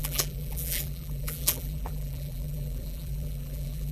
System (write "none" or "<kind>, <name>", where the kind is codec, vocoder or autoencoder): vocoder, BigVGAN v2